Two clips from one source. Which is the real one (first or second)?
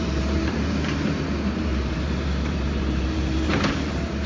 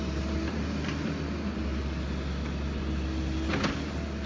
second